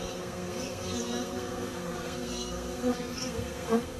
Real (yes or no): no